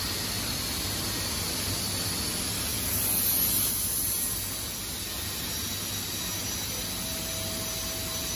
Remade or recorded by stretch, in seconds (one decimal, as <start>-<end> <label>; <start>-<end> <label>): 0.0-8.4 recorded